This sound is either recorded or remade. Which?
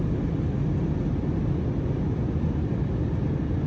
recorded